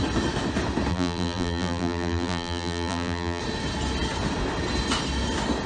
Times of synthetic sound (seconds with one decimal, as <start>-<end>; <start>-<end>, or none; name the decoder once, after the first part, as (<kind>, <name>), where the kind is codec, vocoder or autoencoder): 0.9-3.4 (vocoder, BigVGAN v2)